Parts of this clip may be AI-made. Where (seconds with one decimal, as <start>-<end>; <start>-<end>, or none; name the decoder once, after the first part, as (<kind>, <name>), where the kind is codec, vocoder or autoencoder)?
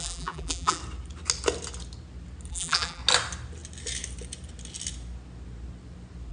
0.0-0.8 (vocoder, BigVGAN v2); 2.5-3.0